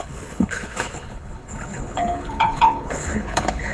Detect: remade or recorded remade